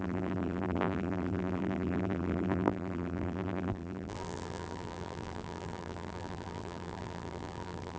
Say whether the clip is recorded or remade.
remade